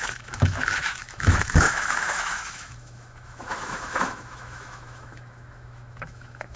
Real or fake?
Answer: fake